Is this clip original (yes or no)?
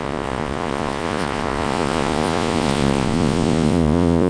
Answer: no